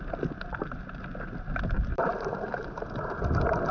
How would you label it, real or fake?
real